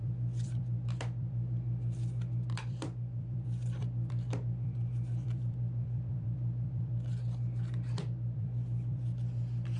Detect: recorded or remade remade